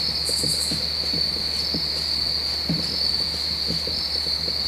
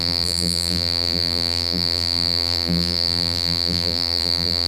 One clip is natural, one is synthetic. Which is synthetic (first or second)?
second